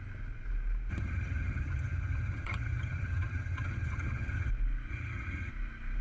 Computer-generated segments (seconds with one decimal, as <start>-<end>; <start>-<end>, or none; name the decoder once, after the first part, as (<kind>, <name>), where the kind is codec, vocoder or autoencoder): 0.9-4.5 (vocoder, HiFi-GAN); 4.9-5.5